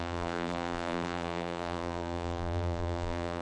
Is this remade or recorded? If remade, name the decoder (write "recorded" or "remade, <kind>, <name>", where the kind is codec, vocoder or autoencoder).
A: remade, vocoder, BigVGAN v2